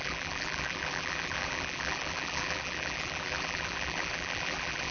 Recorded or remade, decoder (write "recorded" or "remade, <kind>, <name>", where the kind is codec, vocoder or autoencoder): remade, vocoder, BigVGAN v2